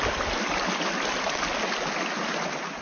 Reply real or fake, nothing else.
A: real